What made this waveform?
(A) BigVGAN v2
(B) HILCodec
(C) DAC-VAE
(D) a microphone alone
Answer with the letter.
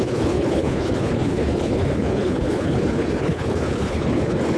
B